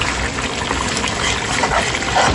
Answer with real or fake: real